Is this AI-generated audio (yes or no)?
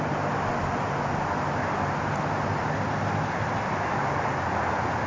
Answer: no